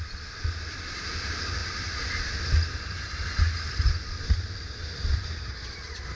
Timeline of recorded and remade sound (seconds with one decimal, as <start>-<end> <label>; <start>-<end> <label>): 0.0-1.6 recorded; 1.6-2.3 remade; 2.3-6.1 recorded